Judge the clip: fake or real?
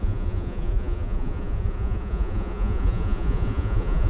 fake